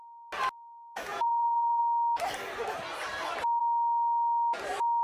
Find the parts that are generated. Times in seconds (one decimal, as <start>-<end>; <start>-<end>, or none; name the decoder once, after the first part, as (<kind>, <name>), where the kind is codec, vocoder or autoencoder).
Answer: 1.1-1.8 (vocoder, Vocos)